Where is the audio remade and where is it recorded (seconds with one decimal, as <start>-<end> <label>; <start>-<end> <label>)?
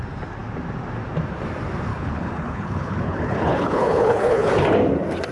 0.0-1.9 recorded; 1.9-4.5 remade; 4.5-5.3 recorded